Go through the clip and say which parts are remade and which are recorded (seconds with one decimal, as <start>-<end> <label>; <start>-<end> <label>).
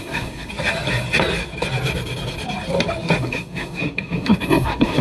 0.0-0.5 remade; 0.5-3.2 recorded; 3.2-5.0 remade